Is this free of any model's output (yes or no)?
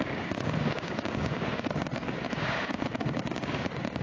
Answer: no